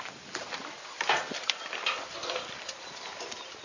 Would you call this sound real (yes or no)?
yes